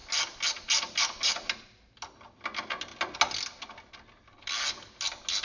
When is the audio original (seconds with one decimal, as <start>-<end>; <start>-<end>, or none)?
0.0-5.4